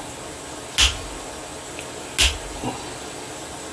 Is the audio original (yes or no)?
yes